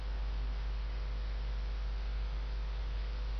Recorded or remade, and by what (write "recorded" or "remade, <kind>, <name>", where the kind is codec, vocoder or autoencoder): remade, codec, DAC